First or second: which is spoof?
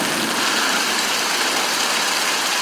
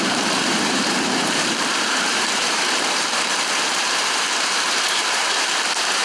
second